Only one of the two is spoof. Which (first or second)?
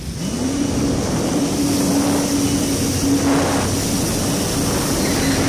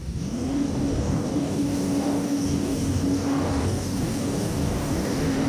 second